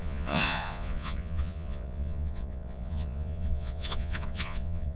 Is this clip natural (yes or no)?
no